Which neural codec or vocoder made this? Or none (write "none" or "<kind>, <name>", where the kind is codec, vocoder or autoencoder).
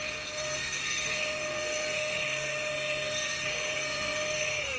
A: codec, SNAC